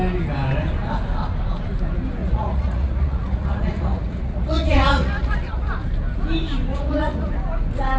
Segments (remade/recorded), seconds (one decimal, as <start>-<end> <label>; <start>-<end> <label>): 0.0-2.2 recorded; 2.2-5.7 remade; 5.7-6.7 recorded; 6.7-7.3 remade; 7.3-8.0 recorded